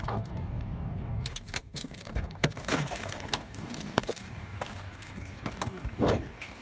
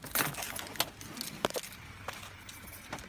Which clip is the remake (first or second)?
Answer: first